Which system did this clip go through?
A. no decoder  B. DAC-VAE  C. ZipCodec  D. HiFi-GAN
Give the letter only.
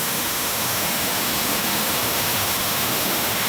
B